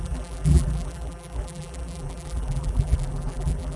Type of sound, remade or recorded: remade